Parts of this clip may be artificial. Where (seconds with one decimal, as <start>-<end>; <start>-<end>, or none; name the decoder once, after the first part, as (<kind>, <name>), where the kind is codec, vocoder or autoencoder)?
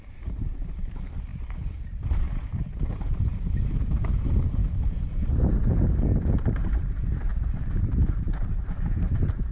0.0-4.6 (vocoder, BigVGAN v2); 6.5-9.5